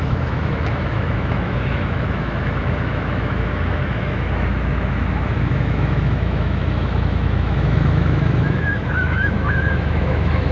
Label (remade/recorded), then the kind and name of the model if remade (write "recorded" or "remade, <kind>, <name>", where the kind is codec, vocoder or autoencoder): remade, autoencoder, DAC-VAE